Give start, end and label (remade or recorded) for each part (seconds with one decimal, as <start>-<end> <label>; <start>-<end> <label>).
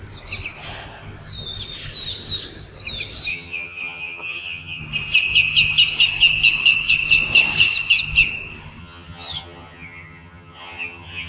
0.0-3.3 recorded; 3.3-4.8 remade; 4.8-8.8 recorded; 8.8-11.3 remade